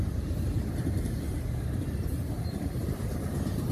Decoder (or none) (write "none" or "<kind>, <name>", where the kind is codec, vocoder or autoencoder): vocoder, BigVGAN v2